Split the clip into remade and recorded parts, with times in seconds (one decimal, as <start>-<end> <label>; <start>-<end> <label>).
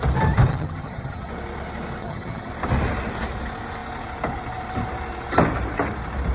0.0-0.5 recorded; 0.5-1.3 remade; 1.3-2.0 recorded; 2.0-2.5 remade; 2.5-6.3 recorded